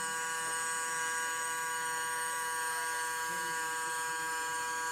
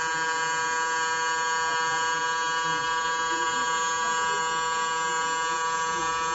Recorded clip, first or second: second